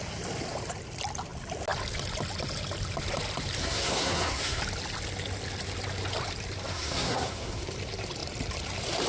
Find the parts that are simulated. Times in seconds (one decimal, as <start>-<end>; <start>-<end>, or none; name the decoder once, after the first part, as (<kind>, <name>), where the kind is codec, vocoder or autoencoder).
3.6-4.6 (codec, SNAC); 6.7-7.7